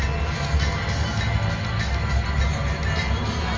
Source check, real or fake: real